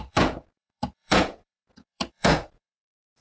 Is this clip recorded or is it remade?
remade